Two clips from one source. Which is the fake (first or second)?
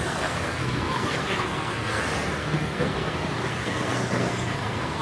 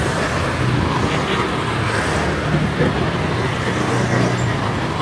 first